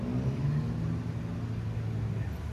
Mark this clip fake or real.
real